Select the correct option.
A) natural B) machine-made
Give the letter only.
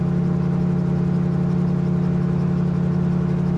A